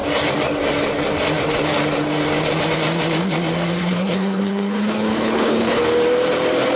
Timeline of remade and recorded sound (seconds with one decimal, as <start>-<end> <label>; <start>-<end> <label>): 0.0-3.8 recorded; 3.8-5.8 remade; 5.8-6.8 recorded